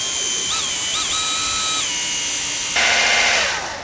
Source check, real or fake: real